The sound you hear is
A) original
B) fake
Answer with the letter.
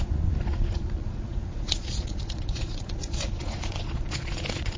B